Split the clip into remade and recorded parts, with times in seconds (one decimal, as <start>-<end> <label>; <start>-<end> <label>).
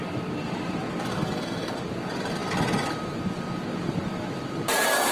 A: 0.0-1.1 recorded; 1.1-1.8 remade; 1.8-5.1 recorded